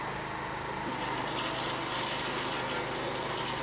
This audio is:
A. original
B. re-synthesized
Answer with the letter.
A